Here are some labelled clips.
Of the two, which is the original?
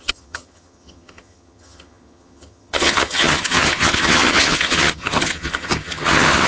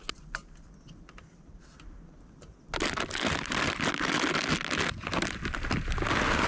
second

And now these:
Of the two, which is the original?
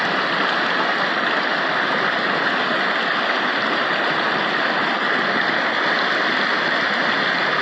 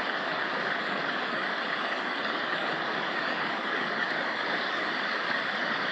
first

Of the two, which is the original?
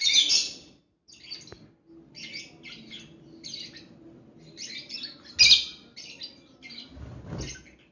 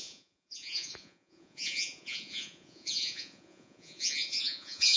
first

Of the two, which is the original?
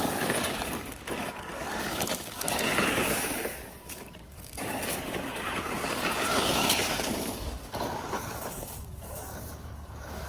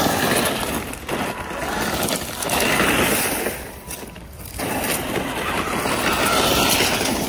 second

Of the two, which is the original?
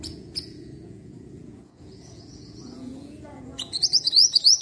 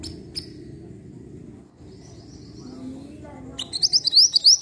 second